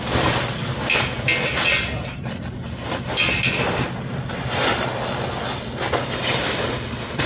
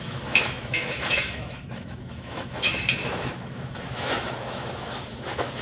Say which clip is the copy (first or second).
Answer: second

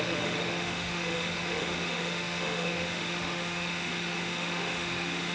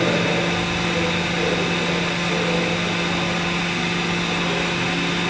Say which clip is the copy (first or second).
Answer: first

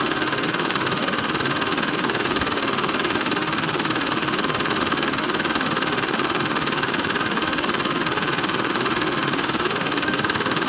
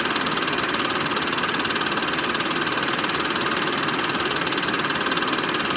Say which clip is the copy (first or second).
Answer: first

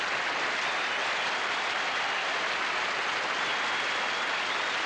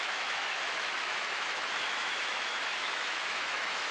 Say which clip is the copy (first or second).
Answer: second